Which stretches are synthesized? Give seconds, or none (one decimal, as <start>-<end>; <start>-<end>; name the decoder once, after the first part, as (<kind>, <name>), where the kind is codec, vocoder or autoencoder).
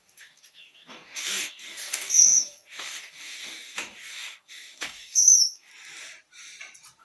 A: 0.0-5.7 (codec, DAC)